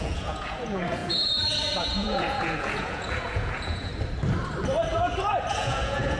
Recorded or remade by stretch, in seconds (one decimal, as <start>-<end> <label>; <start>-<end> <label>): 0.0-3.9 remade; 3.9-5.5 recorded; 5.5-6.2 remade